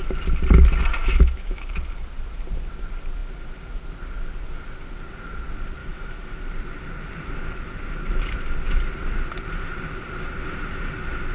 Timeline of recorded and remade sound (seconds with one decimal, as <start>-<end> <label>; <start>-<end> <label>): 0.0-1.0 recorded; 1.0-1.7 remade; 1.7-5.8 recorded; 5.8-6.4 remade; 6.4-11.3 recorded